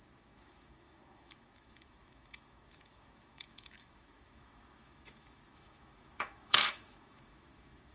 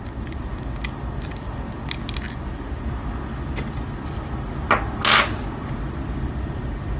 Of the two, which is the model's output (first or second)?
first